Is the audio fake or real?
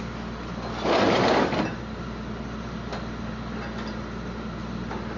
real